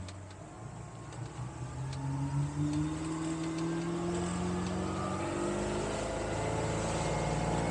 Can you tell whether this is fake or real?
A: real